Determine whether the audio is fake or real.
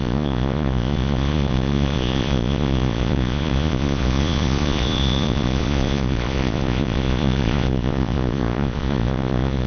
fake